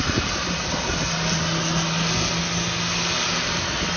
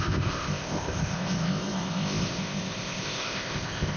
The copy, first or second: second